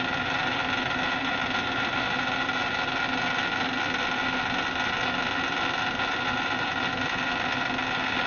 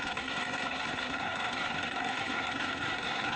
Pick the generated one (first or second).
second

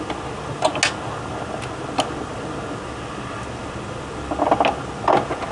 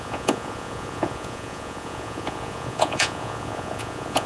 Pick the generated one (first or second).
second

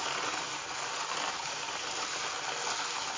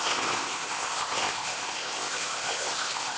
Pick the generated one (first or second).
second